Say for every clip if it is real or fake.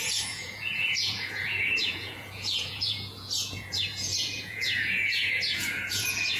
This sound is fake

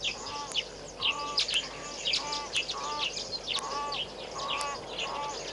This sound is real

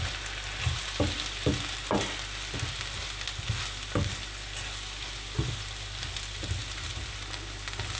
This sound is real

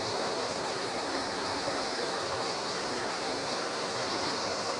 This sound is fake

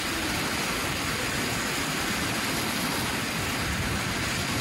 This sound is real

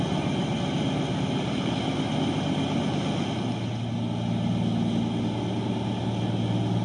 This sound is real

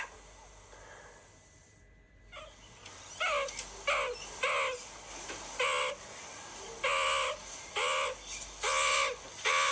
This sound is real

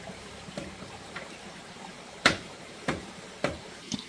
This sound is fake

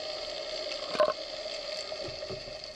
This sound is real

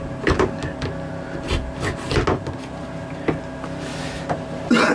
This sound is real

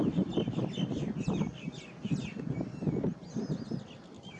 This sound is real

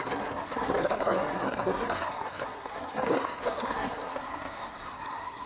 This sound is fake